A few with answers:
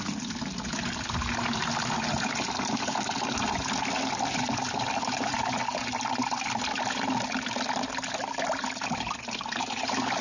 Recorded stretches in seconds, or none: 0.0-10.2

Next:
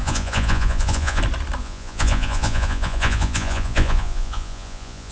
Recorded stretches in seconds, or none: 1.2-1.6